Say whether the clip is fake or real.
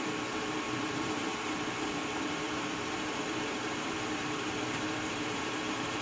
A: fake